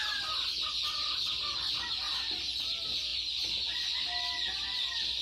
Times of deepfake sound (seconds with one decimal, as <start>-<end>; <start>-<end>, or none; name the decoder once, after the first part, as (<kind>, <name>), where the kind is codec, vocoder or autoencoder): none